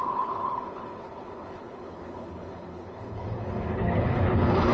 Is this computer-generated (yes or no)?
yes